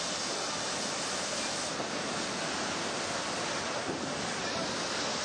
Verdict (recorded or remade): recorded